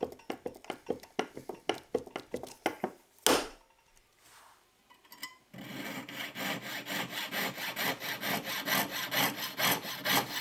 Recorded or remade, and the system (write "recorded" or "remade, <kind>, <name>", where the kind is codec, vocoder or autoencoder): recorded